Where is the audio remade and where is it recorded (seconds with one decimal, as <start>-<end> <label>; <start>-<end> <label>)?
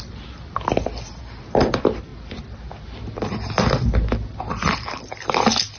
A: 0.0-5.8 recorded